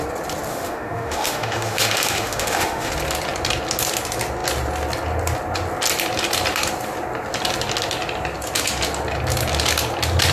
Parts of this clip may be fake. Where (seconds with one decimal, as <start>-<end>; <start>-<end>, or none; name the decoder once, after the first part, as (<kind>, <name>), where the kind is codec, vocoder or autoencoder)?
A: 0.5-2.9 (autoencoder, DAC-VAE)